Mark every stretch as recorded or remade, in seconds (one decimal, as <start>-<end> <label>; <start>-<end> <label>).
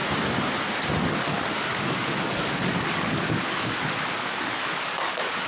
0.0-1.0 recorded; 1.0-5.5 remade